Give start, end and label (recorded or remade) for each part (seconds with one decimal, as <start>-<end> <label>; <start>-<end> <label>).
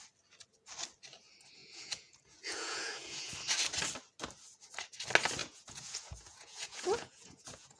0.0-1.6 recorded; 1.6-3.3 remade; 3.3-5.4 recorded; 5.4-7.8 remade